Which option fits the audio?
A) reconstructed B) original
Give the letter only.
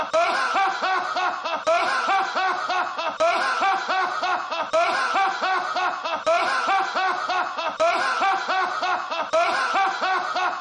B